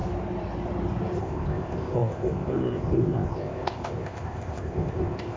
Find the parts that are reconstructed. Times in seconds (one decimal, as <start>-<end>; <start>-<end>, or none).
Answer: 1.2-5.4